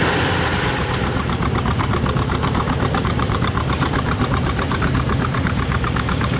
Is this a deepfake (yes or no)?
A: yes